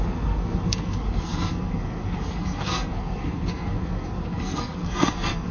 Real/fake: fake